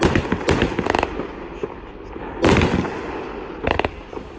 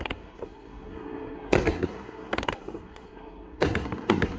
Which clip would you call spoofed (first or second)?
second